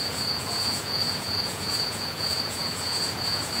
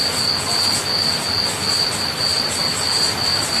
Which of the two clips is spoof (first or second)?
first